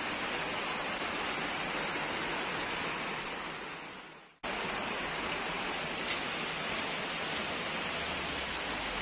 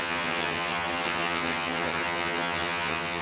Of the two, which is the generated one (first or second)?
second